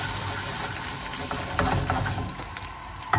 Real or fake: real